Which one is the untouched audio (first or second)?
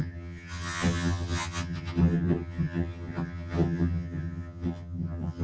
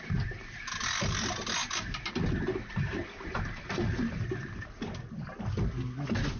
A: second